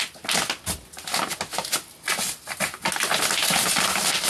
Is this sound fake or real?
real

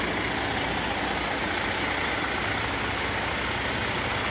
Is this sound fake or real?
real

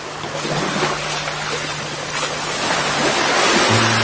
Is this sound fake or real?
real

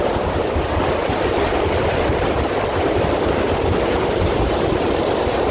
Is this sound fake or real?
fake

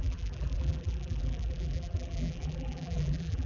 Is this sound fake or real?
fake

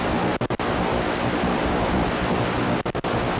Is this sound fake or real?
real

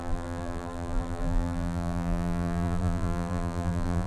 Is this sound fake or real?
fake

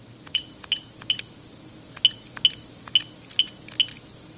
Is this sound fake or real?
real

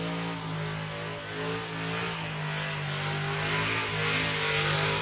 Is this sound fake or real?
real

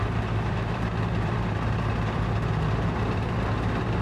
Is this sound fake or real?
fake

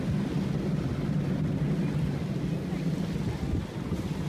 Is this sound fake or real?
real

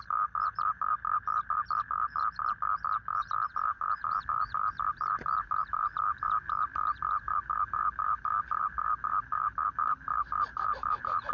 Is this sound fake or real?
fake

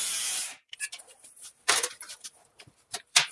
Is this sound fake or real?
fake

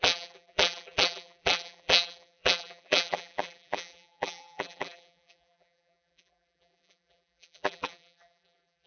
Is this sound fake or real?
fake